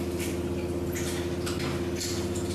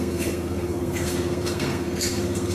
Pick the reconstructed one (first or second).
second